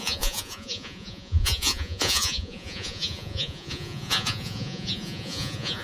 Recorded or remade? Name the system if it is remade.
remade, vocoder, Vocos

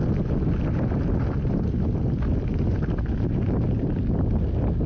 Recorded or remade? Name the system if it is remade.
recorded